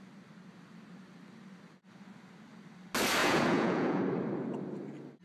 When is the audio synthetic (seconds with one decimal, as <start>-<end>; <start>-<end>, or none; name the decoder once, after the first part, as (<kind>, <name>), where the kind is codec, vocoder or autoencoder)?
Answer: 3.2-4.0 (vocoder, Vocos)